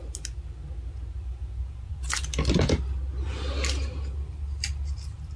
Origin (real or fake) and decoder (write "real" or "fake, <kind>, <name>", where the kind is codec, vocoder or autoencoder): real